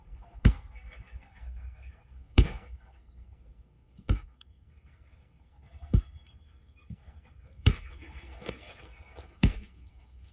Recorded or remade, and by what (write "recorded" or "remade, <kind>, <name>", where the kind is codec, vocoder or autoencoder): remade, codec, SNAC